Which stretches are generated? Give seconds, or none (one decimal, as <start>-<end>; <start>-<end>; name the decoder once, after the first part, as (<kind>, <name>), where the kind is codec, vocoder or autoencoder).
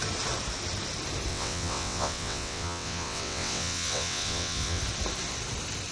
1.3-4.8 (vocoder, WaveNeXt)